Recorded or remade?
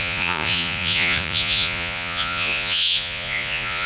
remade